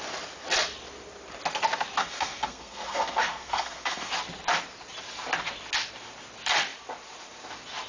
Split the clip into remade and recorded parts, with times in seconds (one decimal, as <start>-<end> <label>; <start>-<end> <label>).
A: 0.0-2.0 recorded; 2.0-4.1 remade; 4.1-7.9 recorded